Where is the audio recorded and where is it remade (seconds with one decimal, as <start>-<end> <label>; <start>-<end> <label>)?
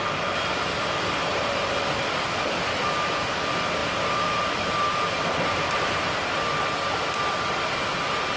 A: 0.0-1.3 recorded; 1.3-1.9 remade; 1.9-3.8 recorded; 3.8-5.4 remade; 5.4-8.4 recorded